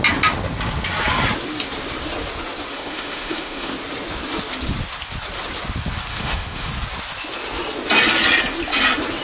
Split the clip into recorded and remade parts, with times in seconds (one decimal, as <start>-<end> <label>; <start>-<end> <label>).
0.0-2.7 recorded; 2.7-3.7 remade; 3.7-6.1 recorded; 6.1-6.7 remade; 6.7-9.2 recorded